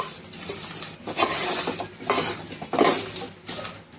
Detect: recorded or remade recorded